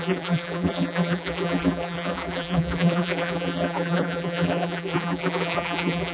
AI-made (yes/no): yes